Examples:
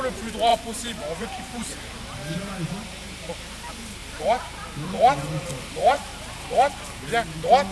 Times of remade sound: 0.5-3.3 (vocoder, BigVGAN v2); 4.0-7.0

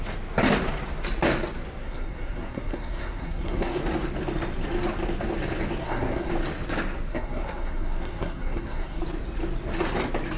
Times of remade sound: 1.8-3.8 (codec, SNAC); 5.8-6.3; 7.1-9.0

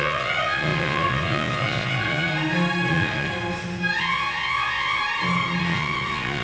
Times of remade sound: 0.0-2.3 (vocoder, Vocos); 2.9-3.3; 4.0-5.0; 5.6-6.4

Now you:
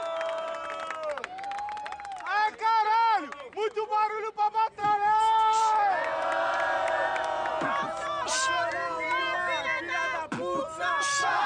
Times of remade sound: 4.8-5.6 (codec, SNAC)

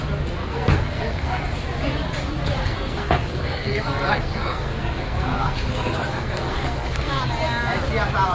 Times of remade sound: 0.4-1.4 (codec, SNAC); 2.6-7.2

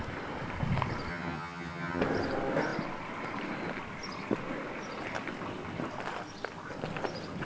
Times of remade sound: 1.1-2.0 (vocoder, HiFi-GAN)

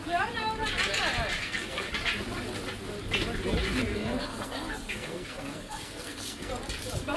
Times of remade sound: 1.4-1.9 (codec, SNAC); 3.9-6.5